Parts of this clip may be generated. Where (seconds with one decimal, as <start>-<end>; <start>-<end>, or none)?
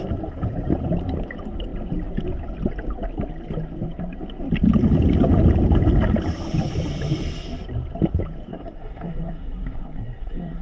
8.5-10.6